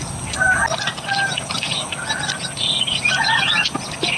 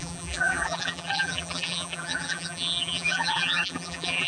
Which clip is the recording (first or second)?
first